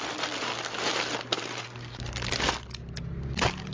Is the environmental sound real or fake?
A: real